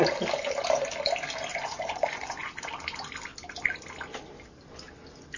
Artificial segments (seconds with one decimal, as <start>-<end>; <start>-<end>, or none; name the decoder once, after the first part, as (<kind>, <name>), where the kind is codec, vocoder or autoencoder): 1.5-2.5 (vocoder, Vocos)